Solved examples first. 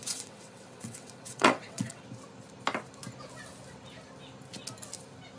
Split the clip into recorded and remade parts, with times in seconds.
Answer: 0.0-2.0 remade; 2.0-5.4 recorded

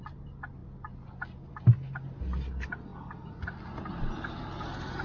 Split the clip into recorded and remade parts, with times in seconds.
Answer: 0.0-5.0 recorded

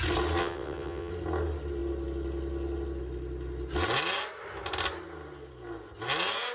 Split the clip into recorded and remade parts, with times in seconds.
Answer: 0.0-0.4 recorded; 0.4-1.1 remade; 1.1-6.5 recorded

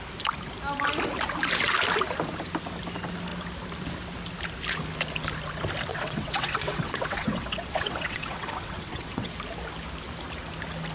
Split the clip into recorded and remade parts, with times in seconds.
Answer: 0.0-5.9 recorded; 5.9-9.3 remade; 9.3-10.9 recorded

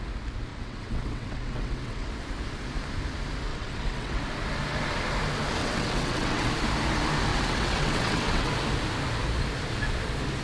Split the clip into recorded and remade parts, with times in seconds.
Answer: 0.0-0.5 recorded; 0.5-2.1 remade; 2.1-3.5 recorded; 3.5-4.2 remade; 4.2-5.6 recorded; 5.6-6.5 remade; 6.5-7.3 recorded; 7.3-8.5 remade; 8.5-10.4 recorded

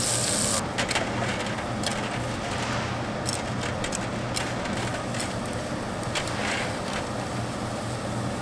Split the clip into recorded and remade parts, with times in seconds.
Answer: 0.0-8.4 recorded

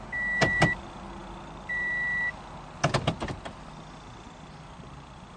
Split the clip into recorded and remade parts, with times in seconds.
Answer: 0.0-5.4 recorded

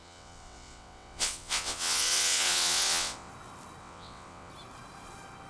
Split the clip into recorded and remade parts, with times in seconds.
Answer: 0.0-3.3 remade; 3.3-3.8 recorded; 3.8-4.5 remade; 4.5-5.5 recorded